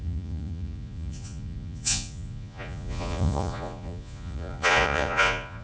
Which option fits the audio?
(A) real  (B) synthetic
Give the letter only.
B